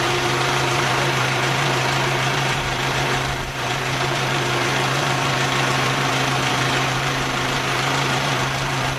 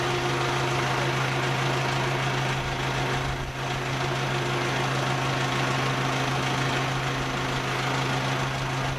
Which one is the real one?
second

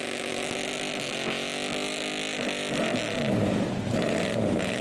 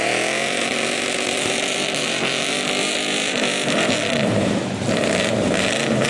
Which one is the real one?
first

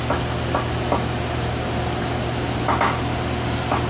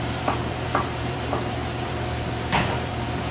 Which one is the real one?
first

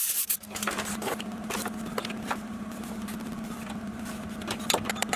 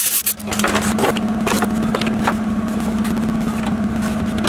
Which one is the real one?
second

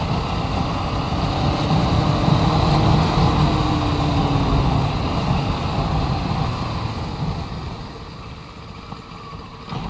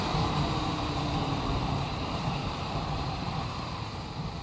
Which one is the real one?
first